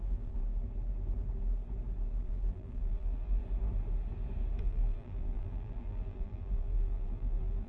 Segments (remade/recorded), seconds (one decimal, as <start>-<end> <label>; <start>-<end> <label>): 0.0-0.4 remade; 0.4-2.2 recorded; 2.2-3.4 remade; 3.4-4.6 recorded; 4.6-7.7 remade

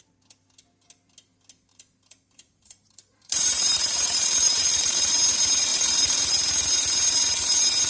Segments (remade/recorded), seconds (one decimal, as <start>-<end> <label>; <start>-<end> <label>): 0.0-1.7 recorded; 1.7-5.1 remade; 5.1-5.7 recorded; 5.7-6.3 remade; 6.3-7.9 recorded

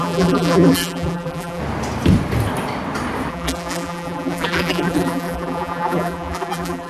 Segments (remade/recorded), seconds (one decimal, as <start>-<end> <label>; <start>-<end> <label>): 0.0-1.6 remade; 1.6-3.3 recorded; 3.3-6.9 remade

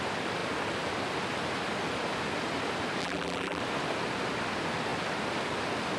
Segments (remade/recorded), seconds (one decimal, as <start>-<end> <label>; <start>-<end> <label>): 0.0-3.0 recorded; 3.0-3.6 remade; 3.6-6.0 recorded

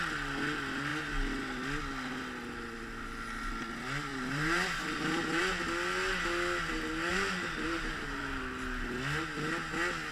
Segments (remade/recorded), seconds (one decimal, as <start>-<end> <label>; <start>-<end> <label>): 0.0-4.1 recorded; 4.1-5.4 remade; 5.4-7.1 recorded; 7.1-8.2 remade; 8.2-10.1 recorded

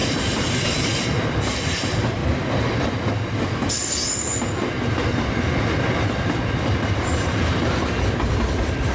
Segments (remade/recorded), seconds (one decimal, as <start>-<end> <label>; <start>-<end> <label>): 0.0-2.2 remade; 2.2-6.7 recorded; 6.7-8.9 remade

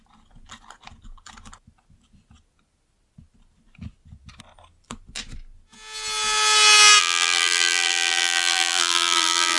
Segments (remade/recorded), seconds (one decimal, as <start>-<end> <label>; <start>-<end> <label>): 0.0-7.0 recorded; 7.0-9.6 remade

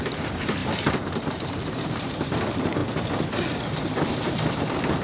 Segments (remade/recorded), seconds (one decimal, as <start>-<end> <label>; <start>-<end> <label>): 0.0-2.8 remade; 2.8-3.6 recorded; 3.6-5.0 remade